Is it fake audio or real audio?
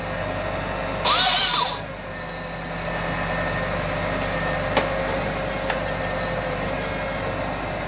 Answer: real